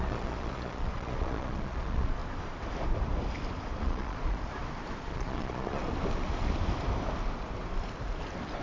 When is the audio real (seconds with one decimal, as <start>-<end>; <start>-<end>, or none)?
2.2-3.8; 4.5-5.0; 5.8-8.6

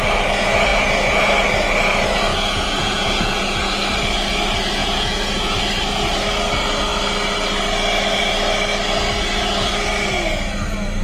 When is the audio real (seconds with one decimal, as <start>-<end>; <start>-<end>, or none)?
0.0-0.7; 1.3-2.3; 3.8-4.8; 5.6-11.0